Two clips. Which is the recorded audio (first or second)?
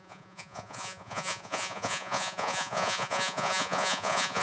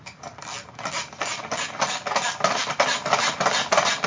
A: second